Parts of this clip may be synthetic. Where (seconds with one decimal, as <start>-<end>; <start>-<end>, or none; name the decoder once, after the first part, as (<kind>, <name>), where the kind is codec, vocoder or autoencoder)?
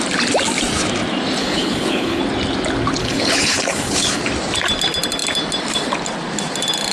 1.4-2.2 (codec, HILCodec); 3.0-4.2